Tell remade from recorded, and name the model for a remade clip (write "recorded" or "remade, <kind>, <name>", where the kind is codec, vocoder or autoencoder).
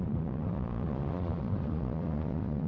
remade, vocoder, Vocos